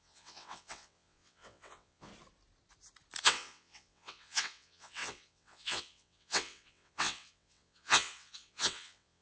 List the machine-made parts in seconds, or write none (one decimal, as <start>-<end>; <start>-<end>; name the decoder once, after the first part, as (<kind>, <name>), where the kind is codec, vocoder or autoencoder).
0.0-2.1 (vocoder, WaveNeXt); 3.2-9.2